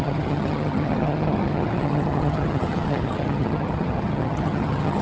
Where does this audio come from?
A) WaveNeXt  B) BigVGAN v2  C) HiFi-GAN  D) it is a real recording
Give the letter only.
C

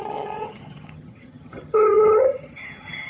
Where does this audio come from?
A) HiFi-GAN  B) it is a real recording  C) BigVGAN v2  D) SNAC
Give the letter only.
A